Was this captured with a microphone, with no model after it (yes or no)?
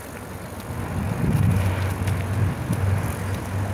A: yes